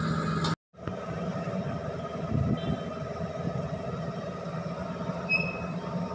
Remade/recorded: recorded